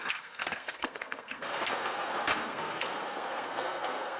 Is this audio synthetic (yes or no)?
yes